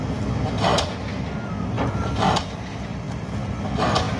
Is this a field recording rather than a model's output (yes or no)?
yes